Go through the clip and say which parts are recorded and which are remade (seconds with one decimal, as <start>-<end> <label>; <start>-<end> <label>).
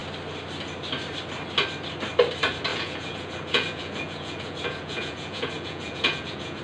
0.0-2.7 recorded; 2.7-6.6 remade